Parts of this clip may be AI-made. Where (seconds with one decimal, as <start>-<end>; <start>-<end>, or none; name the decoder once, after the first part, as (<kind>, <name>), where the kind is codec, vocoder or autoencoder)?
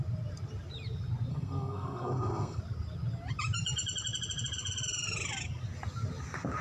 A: 1.3-2.6 (codec, SNAC)